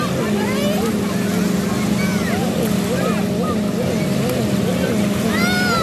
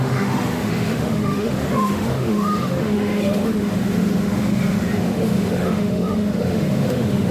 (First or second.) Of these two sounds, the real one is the first